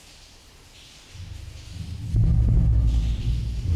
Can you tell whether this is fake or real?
real